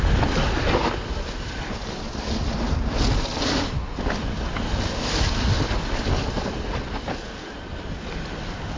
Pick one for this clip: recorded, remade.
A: recorded